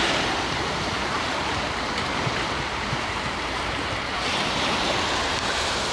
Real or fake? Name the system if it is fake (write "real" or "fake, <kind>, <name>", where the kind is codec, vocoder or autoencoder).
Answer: fake, vocoder, BigVGAN v2